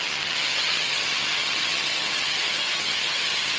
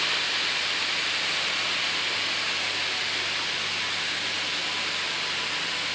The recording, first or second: second